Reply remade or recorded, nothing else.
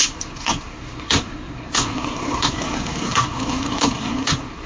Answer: remade